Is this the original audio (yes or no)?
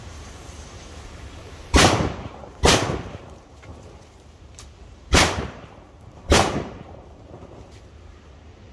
no